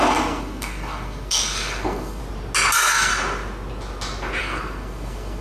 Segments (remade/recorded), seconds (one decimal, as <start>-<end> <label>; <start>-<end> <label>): 0.0-2.2 remade; 2.2-2.7 recorded; 2.7-3.1 remade; 3.1-4.4 recorded; 4.4-5.4 remade